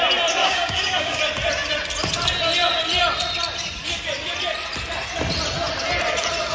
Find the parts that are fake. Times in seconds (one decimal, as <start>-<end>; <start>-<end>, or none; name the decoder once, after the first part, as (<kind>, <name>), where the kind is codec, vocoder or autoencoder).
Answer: 0.4-1.2 (codec, DAC)